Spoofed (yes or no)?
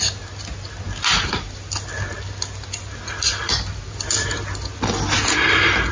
no